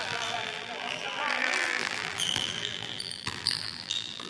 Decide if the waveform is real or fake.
fake